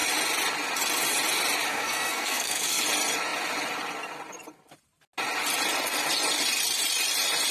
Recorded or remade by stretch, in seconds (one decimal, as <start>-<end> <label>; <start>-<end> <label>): 0.0-1.7 recorded; 1.7-2.8 remade; 2.8-7.5 recorded